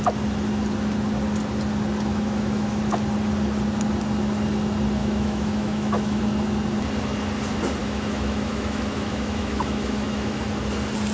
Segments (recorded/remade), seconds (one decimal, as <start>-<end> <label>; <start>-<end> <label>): 0.0-2.1 recorded; 2.1-2.8 remade; 2.8-5.0 recorded; 5.0-6.2 remade; 6.2-7.8 recorded; 7.8-10.4 remade; 10.4-11.1 recorded